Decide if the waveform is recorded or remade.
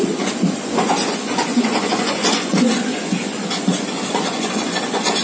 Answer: remade